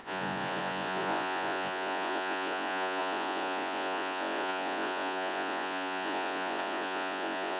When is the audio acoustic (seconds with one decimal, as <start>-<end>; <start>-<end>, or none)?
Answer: none